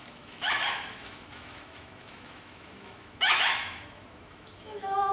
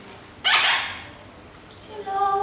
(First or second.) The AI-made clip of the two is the first